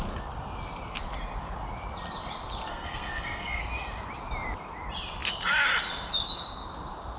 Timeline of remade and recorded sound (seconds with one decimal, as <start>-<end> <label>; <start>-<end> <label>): 0.0-2.7 recorded; 2.7-3.6 remade; 3.6-7.2 recorded